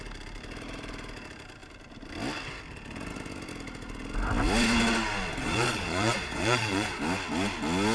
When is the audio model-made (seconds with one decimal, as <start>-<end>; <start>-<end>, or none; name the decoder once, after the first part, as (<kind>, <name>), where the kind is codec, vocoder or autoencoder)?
5.4-7.0 (vocoder, Vocos)